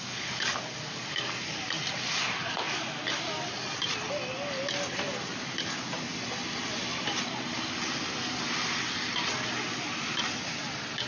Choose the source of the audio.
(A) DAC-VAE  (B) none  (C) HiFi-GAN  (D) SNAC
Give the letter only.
B